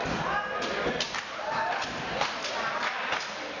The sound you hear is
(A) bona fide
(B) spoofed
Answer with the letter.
A